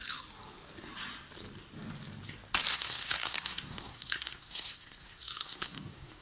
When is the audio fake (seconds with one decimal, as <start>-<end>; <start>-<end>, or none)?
2.7-6.2